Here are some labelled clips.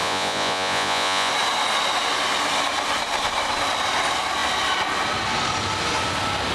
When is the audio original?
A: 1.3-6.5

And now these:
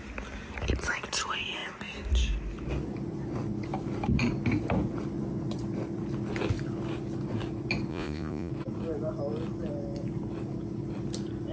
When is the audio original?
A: 0.0-7.9; 8.5-11.5

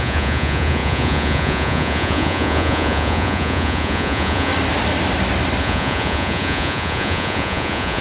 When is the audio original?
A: 4.5-5.6

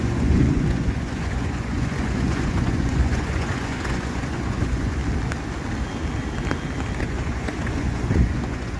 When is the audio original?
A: 5.0-7.0